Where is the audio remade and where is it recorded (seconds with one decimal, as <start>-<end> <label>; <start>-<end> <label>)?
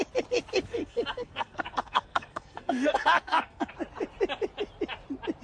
0.0-0.8 recorded; 0.8-3.7 remade; 3.7-5.4 recorded